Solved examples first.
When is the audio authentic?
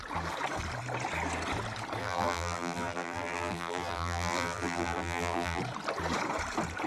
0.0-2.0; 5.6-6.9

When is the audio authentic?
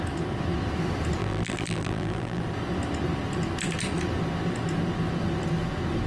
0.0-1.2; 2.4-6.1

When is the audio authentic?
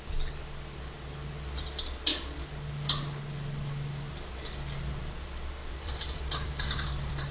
0.0-5.6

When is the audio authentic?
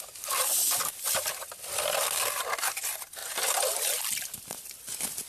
none